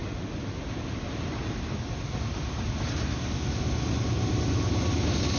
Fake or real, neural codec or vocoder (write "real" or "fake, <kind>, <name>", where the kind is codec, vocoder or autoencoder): real